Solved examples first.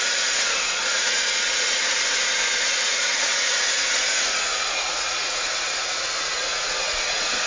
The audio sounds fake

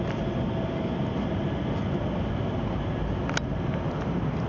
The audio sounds real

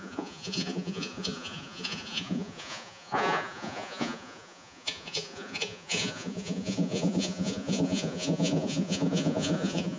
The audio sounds fake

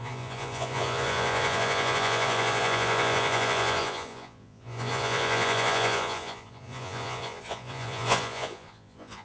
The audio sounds fake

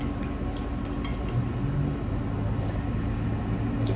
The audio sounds real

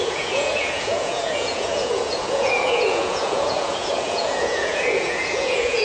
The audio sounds fake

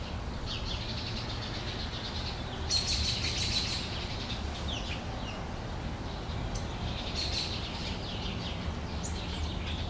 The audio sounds real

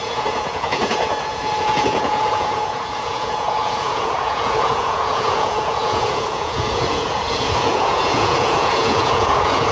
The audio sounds fake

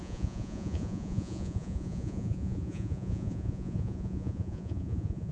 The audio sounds fake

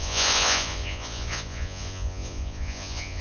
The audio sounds fake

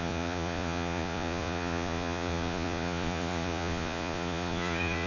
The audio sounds fake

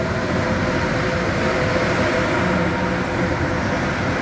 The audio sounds real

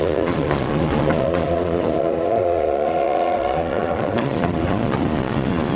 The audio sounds fake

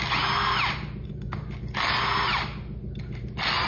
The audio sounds real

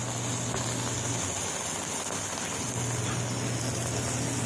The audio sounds real